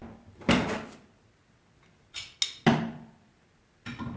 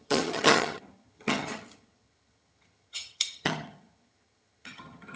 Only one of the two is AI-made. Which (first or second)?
second